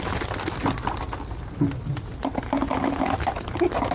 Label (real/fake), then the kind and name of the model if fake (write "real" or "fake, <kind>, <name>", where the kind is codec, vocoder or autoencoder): real